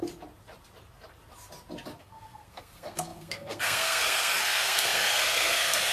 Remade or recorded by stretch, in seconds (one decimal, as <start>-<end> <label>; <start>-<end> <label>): 0.0-2.0 recorded; 2.0-5.9 remade